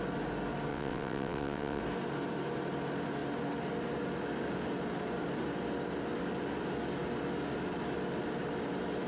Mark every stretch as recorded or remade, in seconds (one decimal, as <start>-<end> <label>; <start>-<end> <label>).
0.0-0.7 recorded; 0.7-1.8 remade; 1.8-9.1 recorded